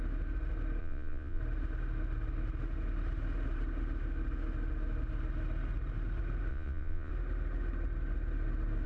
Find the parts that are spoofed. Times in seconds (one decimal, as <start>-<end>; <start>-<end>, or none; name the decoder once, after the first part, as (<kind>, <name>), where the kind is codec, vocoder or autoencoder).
0.8-1.4 (vocoder, Vocos); 6.5-7.1